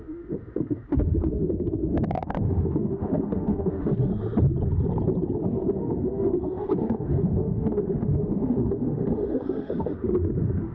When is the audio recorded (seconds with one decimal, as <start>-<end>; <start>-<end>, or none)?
4.1-5.4